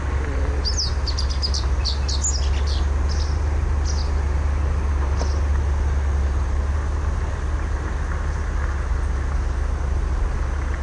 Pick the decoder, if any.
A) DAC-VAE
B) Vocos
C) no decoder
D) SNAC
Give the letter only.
C